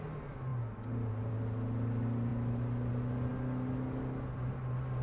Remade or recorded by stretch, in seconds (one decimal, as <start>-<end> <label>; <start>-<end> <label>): 0.0-5.0 recorded

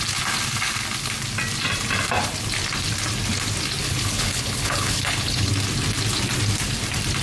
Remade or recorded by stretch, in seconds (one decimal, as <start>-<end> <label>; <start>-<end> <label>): 0.0-3.8 recorded; 3.8-5.5 remade; 5.5-7.2 recorded

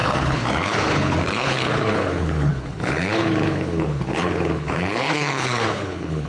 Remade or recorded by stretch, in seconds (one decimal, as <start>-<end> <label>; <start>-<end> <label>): 0.0-6.3 remade

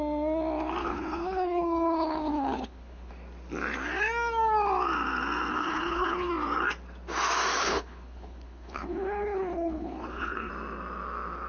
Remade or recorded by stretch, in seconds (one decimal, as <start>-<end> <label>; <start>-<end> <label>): 0.0-0.8 recorded; 0.8-3.1 remade; 3.1-5.5 recorded; 5.5-6.3 remade; 6.3-7.6 recorded; 7.6-10.5 remade; 10.5-11.5 recorded

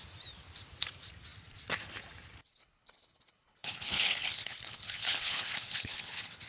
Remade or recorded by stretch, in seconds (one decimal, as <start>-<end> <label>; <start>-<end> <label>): 0.0-2.6 recorded; 2.6-6.5 remade

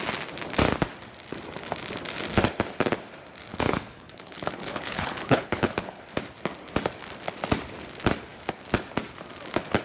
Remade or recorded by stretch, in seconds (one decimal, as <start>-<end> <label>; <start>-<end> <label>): 0.0-3.5 recorded; 3.5-6.0 remade; 6.0-9.8 recorded

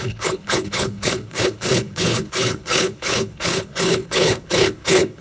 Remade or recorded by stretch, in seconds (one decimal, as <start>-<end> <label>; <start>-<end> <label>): 0.0-5.2 remade

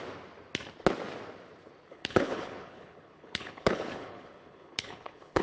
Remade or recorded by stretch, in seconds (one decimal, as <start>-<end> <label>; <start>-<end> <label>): 0.0-1.9 recorded; 1.9-5.4 remade